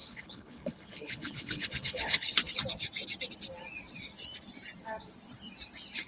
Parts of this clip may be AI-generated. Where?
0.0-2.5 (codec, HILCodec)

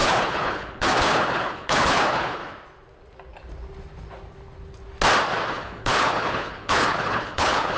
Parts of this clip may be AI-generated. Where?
0.0-2.4 (codec, HILCodec); 5.5-7.8

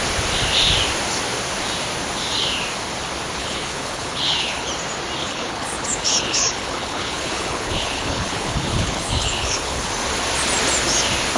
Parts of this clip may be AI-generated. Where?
3.4-4.7 (codec, HILCodec); 5.2-9.9

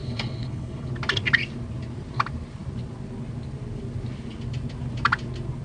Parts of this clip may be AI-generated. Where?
0.0-0.9 (codec, HILCodec)

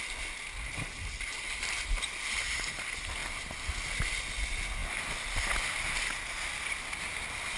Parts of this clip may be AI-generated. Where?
none